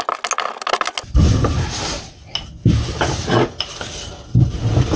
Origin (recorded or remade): recorded